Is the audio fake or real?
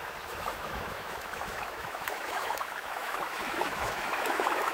fake